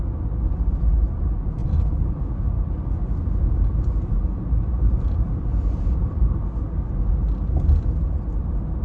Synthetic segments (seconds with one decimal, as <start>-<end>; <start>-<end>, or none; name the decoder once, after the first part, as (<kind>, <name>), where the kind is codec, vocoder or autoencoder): 4.3-6.8 (vocoder, BigVGAN v2)